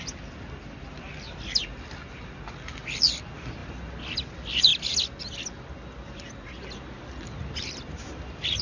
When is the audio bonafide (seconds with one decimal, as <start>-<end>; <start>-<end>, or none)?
0.0-8.6